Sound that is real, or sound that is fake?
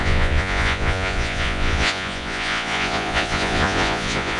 fake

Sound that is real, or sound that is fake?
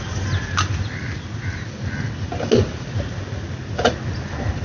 real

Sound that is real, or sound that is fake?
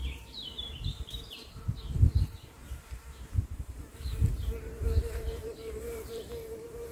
fake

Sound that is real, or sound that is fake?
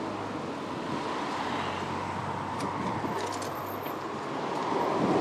real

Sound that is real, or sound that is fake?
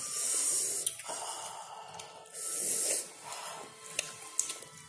real